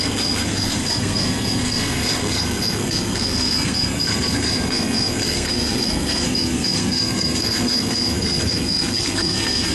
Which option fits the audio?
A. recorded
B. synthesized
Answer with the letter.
B